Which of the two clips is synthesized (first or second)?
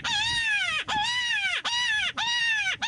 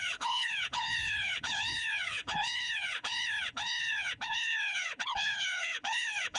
second